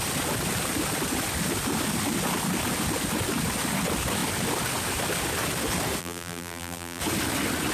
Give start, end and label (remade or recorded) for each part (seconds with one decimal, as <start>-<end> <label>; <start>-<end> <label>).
0.0-6.0 recorded; 6.0-7.0 remade; 7.0-7.7 recorded